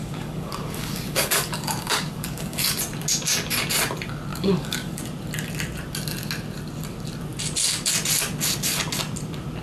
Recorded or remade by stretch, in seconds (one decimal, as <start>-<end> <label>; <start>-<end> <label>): 0.0-2.6 remade; 2.6-4.3 recorded; 4.3-5.0 remade; 5.0-9.6 recorded